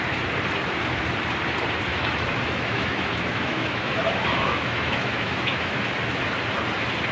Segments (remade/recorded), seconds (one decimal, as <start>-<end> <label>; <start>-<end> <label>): 0.0-1.9 recorded; 1.9-5.8 remade; 5.8-7.1 recorded